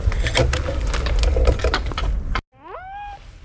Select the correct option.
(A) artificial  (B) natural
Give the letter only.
B